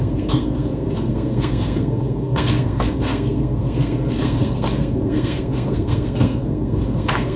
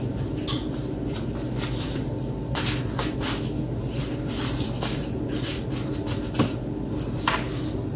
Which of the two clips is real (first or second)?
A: second